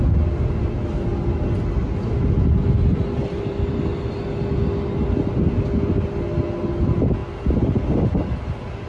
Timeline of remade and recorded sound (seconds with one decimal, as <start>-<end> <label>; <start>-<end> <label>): 0.0-8.9 recorded